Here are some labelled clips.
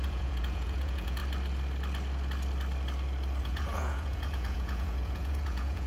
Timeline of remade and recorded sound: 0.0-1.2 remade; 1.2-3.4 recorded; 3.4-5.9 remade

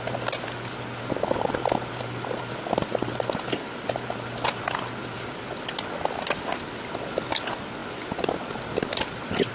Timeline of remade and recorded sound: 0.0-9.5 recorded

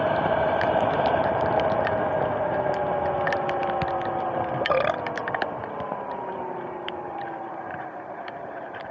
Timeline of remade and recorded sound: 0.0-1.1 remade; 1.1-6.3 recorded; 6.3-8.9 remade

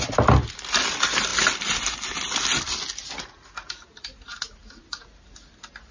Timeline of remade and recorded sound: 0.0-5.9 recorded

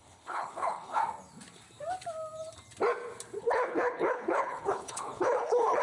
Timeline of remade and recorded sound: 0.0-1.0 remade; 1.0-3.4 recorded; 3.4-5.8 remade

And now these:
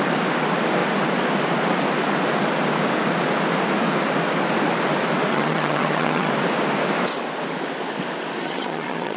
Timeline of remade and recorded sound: 0.0-5.3 recorded; 5.3-6.3 remade; 6.3-8.4 recorded; 8.4-9.2 remade